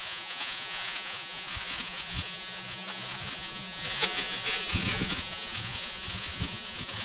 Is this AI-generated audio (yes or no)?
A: yes